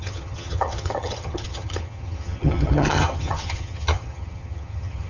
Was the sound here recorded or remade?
remade